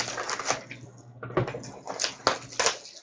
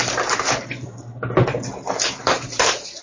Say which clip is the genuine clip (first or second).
first